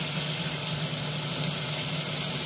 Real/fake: real